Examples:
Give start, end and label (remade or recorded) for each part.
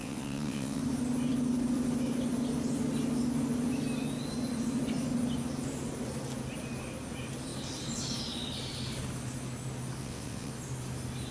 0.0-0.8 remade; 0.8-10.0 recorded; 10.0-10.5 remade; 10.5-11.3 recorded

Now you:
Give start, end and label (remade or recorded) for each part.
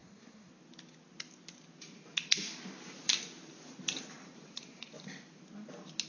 0.0-0.5 remade; 0.5-6.1 recorded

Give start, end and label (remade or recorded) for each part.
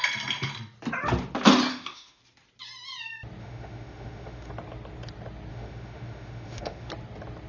0.0-1.7 recorded; 1.7-2.2 remade; 2.2-3.4 recorded; 3.4-4.5 remade; 4.5-5.5 recorded; 5.5-6.9 remade; 6.9-7.5 recorded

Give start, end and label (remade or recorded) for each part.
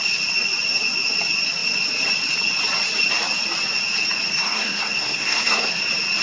0.0-4.3 recorded; 4.3-5.8 remade; 5.8-6.2 recorded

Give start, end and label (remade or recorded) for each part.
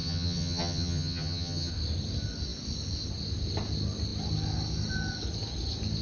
0.0-1.7 remade; 1.7-6.0 recorded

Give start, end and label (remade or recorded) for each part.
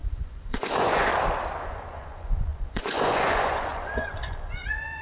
0.0-1.1 remade; 1.1-1.6 recorded; 1.6-5.0 remade